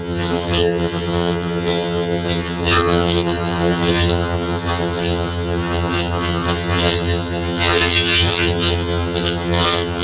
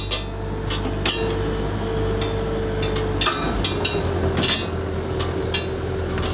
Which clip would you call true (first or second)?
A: second